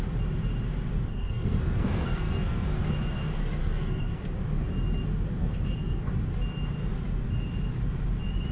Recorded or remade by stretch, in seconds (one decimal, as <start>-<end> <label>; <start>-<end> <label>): 0.0-1.1 recorded; 1.1-2.8 remade; 2.8-3.6 recorded; 3.6-4.3 remade; 4.3-5.3 recorded; 5.3-6.1 remade; 6.1-8.5 recorded

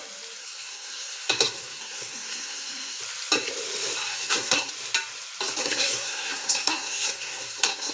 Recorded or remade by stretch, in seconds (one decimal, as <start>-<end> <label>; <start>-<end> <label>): 0.0-0.4 recorded; 0.4-3.0 remade; 3.0-4.1 recorded; 4.1-4.7 remade; 4.7-5.6 recorded; 5.6-7.9 remade

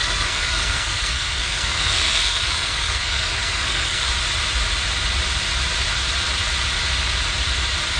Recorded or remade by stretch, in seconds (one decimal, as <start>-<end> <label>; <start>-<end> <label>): 0.0-4.1 remade; 4.1-8.0 recorded

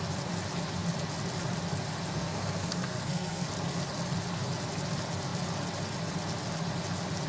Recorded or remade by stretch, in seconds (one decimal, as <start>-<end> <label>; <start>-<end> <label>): 0.0-2.1 recorded; 2.1-3.5 remade; 3.5-7.3 recorded